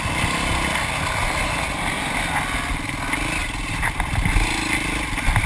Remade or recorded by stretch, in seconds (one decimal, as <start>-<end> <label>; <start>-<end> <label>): 0.0-3.4 recorded; 3.4-4.1 remade; 4.1-5.5 recorded